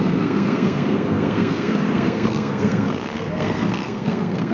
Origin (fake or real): fake